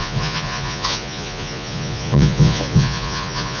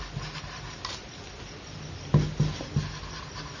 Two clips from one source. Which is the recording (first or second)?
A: second